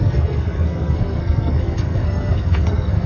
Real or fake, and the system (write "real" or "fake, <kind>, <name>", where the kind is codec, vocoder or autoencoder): fake, codec, SNAC